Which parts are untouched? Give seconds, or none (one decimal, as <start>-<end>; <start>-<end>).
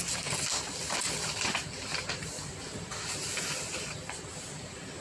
0.0-5.0